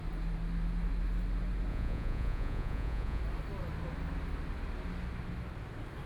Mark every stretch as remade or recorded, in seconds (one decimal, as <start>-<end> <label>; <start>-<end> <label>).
0.0-1.7 recorded; 1.7-3.2 remade; 3.2-6.1 recorded